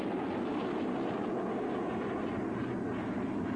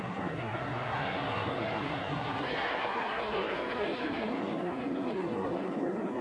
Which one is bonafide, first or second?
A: first